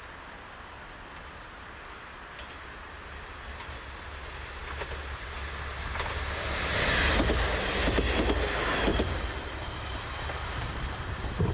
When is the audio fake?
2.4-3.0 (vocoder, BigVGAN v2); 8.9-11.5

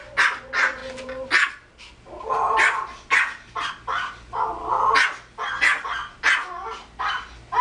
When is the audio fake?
none

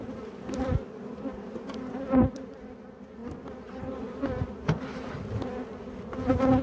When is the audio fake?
none

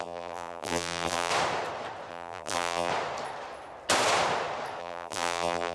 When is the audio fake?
0.0-1.3 (vocoder, BigVGAN v2); 2.1-2.9; 4.8-5.7

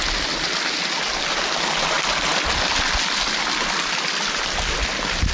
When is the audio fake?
none

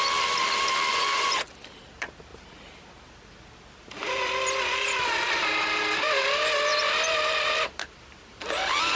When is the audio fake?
0.9-1.5 (vocoder, Vocos)